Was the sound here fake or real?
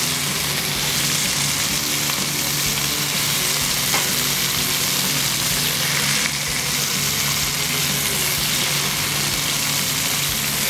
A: real